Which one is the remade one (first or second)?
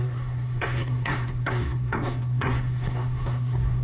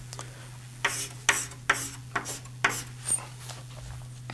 first